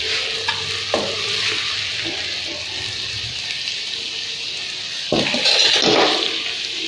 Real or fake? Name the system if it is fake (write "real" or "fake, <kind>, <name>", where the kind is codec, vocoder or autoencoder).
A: real